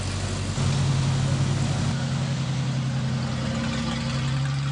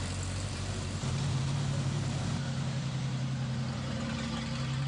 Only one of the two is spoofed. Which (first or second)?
second